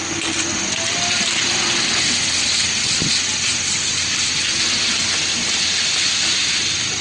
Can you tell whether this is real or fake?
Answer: real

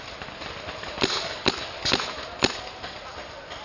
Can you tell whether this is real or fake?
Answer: real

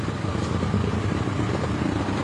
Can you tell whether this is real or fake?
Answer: fake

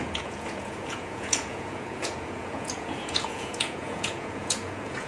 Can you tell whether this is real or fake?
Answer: fake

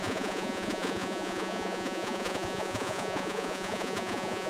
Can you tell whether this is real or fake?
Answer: fake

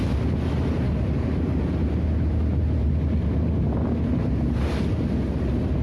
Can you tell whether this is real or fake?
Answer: real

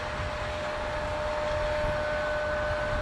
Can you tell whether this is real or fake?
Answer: real